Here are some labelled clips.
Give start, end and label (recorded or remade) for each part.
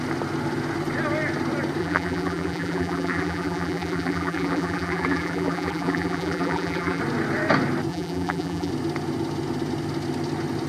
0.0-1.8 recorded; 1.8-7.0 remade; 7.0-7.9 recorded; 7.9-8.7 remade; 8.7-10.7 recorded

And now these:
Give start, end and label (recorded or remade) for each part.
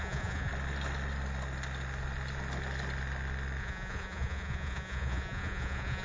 0.0-0.5 remade; 0.5-3.6 recorded; 3.6-6.0 remade